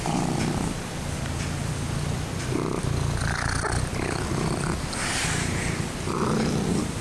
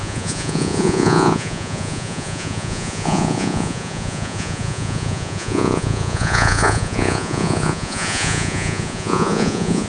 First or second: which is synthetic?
second